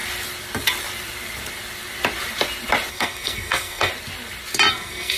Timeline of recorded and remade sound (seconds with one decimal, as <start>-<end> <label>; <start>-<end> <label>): 0.0-2.9 recorded; 2.9-3.9 remade; 3.9-4.7 recorded; 4.7-5.2 remade